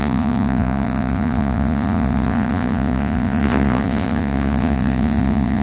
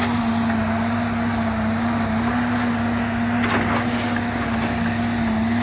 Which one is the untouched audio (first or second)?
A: second